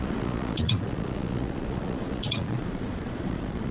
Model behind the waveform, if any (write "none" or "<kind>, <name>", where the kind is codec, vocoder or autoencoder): vocoder, Vocos